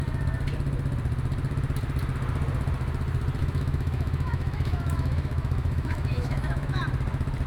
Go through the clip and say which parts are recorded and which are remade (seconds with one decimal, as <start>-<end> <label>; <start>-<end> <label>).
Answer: 0.0-3.4 recorded; 3.4-6.8 remade; 6.8-7.5 recorded